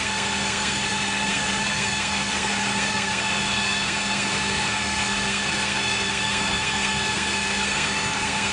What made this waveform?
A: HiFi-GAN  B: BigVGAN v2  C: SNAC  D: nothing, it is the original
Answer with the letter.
C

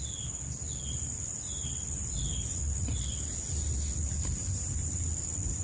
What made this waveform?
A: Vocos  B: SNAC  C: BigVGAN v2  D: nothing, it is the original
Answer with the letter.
D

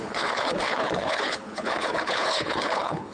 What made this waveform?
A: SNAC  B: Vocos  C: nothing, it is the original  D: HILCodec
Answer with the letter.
D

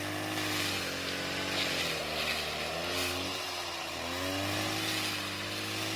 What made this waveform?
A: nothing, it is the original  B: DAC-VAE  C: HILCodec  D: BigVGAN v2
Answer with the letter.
A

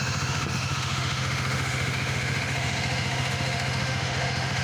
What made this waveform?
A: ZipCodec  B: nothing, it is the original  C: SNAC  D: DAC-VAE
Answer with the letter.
D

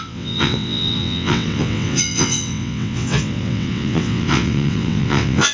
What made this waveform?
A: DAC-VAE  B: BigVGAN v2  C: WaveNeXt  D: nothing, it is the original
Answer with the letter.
C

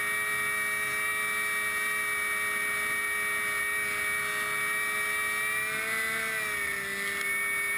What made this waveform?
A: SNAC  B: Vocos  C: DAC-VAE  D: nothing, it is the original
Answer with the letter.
D